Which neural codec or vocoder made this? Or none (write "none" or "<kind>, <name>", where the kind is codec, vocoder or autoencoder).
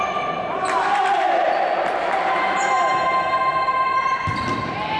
none